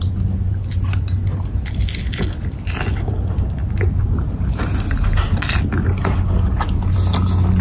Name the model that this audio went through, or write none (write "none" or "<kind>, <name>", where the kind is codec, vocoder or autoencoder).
none